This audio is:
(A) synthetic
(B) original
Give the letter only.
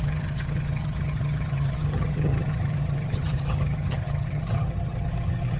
A